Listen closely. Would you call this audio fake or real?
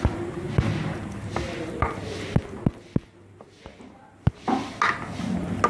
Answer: real